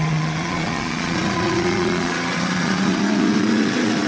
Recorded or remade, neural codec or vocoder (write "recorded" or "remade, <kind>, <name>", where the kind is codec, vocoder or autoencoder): remade, vocoder, Vocos